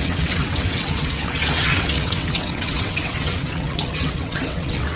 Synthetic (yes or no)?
yes